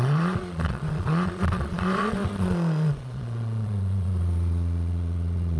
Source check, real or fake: fake